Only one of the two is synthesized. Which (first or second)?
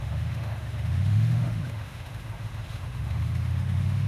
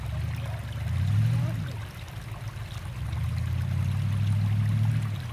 first